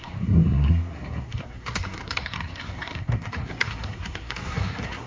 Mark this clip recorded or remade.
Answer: remade